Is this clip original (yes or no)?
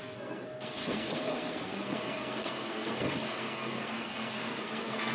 no